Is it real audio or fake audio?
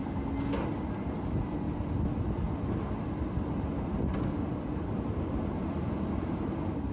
real